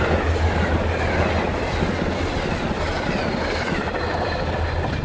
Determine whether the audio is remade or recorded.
recorded